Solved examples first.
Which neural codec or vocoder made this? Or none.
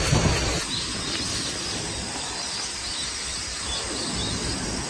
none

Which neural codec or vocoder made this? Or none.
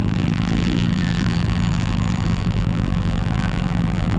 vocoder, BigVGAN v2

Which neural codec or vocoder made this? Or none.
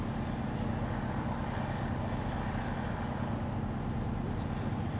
none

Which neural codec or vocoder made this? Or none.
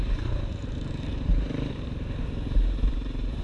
vocoder, BigVGAN v2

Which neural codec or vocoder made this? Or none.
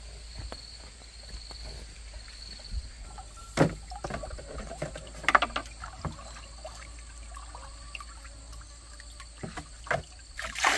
none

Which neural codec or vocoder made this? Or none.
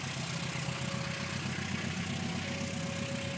none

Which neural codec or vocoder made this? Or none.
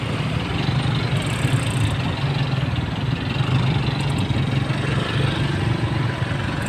none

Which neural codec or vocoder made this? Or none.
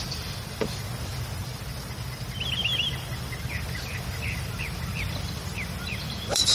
vocoder, BigVGAN v2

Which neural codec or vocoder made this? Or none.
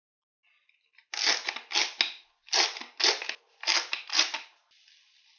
none